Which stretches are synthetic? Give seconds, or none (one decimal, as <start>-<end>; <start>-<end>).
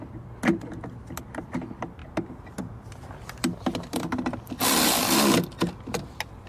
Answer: none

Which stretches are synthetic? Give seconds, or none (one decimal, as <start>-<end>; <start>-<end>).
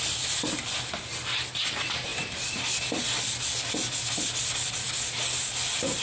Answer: none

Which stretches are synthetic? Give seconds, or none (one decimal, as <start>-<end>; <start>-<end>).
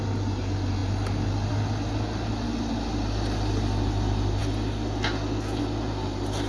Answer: none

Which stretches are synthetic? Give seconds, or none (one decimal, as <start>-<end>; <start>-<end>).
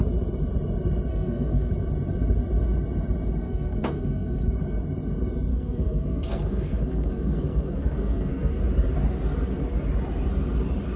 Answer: 1.1-1.7; 3.4-4.5; 5.5-8.6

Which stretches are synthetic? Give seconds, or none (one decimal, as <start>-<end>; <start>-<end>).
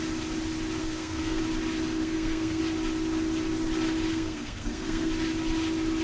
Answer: 0.8-1.4; 2.0-2.6; 4.1-5.1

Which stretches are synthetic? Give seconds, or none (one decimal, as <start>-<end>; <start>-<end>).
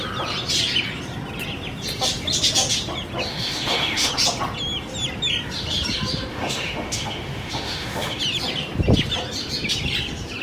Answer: 3.3-4.1; 6.3-8.2